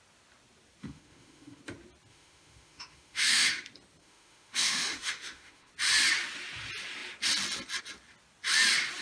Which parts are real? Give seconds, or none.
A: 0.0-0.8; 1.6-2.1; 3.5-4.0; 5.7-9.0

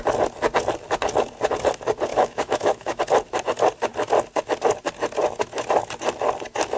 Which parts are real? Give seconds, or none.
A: 0.0-2.1; 3.0-6.8

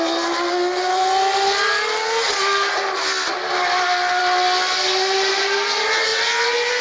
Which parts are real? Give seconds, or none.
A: 0.0-6.8

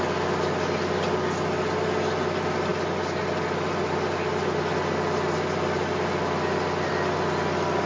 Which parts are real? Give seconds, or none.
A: 0.0-7.9